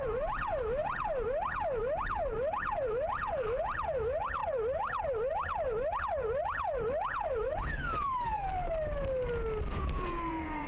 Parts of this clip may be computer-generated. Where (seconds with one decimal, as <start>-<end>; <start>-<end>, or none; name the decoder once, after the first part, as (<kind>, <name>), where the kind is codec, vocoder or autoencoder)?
0.0-4.4 (vocoder, Vocos); 6.0-8.5; 9.7-10.7